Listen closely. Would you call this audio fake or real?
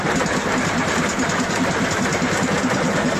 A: fake